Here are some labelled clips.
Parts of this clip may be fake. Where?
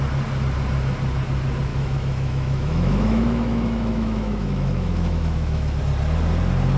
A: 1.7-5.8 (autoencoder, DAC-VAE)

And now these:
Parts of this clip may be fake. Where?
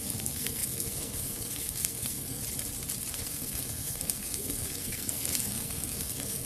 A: 0.0-2.4 (codec, SNAC); 3.1-6.5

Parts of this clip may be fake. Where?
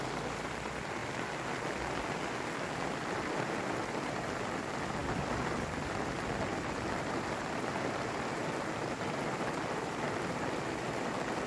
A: 0.0-1.0 (vocoder, BigVGAN v2); 3.1-6.5; 7.4-11.5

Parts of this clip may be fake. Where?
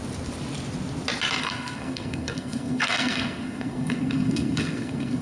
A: 1.4-5.2 (codec, SNAC)